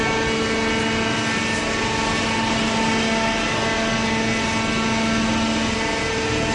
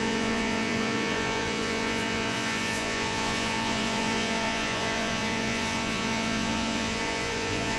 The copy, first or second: second